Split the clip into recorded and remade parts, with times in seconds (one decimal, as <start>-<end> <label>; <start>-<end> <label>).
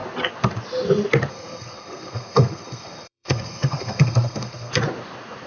0.0-1.3 recorded; 1.3-4.7 remade; 4.7-5.5 recorded